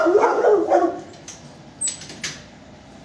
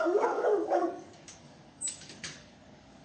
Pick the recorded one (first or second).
first